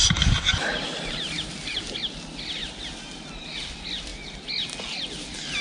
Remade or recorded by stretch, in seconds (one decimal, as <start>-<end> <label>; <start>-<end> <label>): 0.0-1.8 remade; 1.8-2.6 recorded; 2.6-3.4 remade; 3.4-5.6 recorded